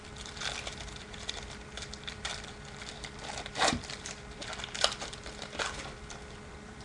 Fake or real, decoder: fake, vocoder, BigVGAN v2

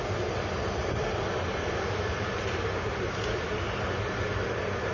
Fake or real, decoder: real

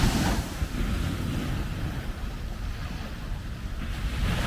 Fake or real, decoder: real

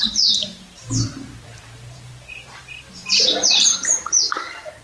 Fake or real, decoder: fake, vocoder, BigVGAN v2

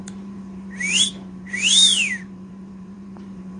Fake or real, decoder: fake, vocoder, BigVGAN v2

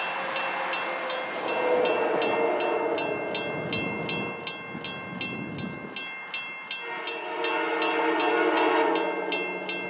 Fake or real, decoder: real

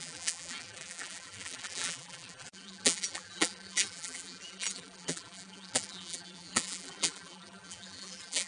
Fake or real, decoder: fake, vocoder, BigVGAN v2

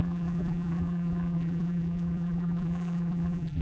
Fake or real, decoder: fake, vocoder, BigVGAN v2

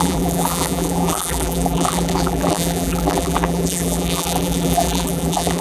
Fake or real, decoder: fake, vocoder, BigVGAN v2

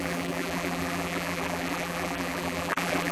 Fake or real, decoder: fake, vocoder, BigVGAN v2